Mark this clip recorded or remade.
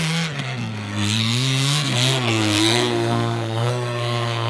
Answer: remade